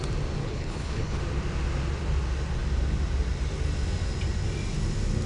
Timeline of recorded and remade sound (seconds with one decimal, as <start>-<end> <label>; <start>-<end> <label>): 0.0-0.4 recorded; 0.4-1.2 remade; 1.2-5.3 recorded